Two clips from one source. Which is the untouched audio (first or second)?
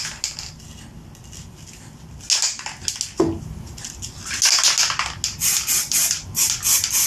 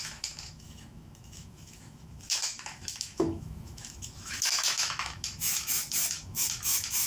first